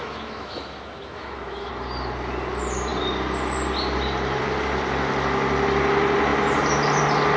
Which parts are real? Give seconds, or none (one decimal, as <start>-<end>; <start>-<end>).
1.7-7.4